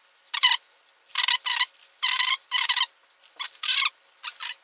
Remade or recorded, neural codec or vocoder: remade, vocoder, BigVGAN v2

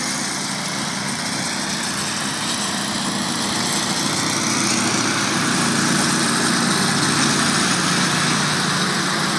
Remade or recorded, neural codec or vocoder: recorded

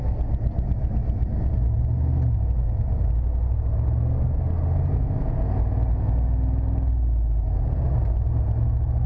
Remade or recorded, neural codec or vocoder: recorded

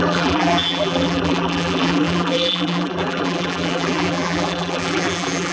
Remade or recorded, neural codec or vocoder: remade, vocoder, BigVGAN v2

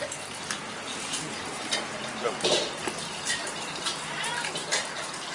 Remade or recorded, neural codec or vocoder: remade, vocoder, BigVGAN v2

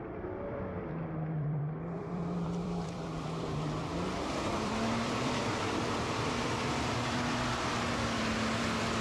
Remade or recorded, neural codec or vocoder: remade, vocoder, BigVGAN v2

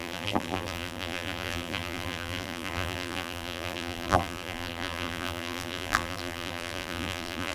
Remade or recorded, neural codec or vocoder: remade, vocoder, BigVGAN v2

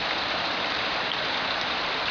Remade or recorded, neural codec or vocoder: remade, vocoder, BigVGAN v2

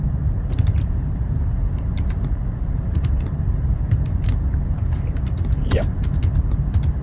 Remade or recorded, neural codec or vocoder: remade, vocoder, BigVGAN v2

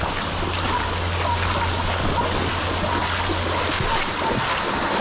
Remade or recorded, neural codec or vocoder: recorded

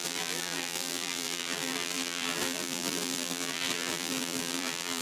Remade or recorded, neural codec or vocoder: remade, vocoder, BigVGAN v2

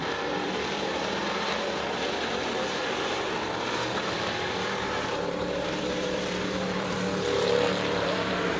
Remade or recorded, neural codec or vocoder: remade, vocoder, BigVGAN v2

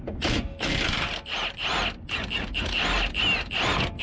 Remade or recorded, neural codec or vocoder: recorded